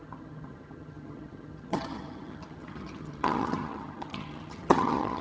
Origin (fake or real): fake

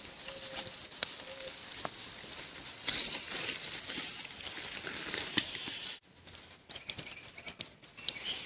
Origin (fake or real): real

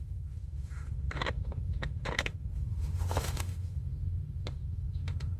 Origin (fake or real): fake